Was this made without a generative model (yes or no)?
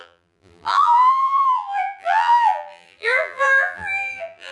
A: no